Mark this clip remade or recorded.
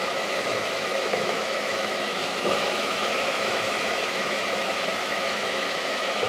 remade